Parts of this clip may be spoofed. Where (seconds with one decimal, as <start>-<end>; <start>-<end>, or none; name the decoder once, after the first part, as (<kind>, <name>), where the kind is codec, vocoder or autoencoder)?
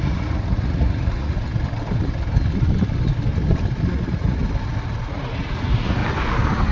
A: 0.0-1.5 (vocoder, Vocos); 3.9-4.4; 5.0-6.0